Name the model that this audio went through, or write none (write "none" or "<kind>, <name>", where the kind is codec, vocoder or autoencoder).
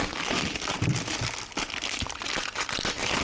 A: none